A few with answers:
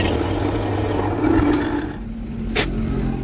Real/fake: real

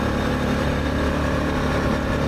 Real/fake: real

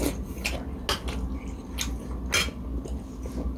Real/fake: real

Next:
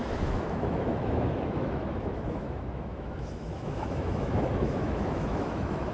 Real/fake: fake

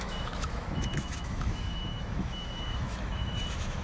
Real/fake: fake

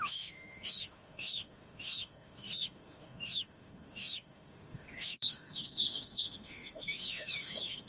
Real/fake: fake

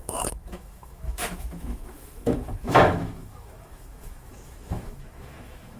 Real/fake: fake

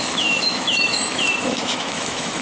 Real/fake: fake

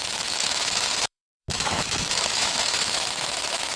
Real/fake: fake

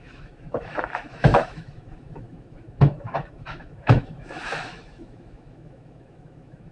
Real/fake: fake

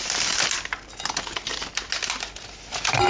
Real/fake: real